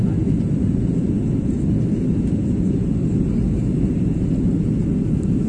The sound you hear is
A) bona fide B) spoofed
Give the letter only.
A